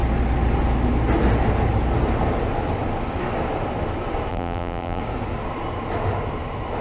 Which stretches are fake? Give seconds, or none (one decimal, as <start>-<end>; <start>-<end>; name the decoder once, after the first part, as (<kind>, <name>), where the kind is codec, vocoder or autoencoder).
4.3-5.0 (vocoder, BigVGAN v2)